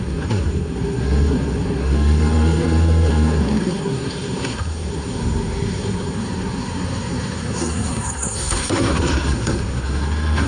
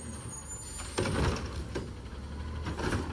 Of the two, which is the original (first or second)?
second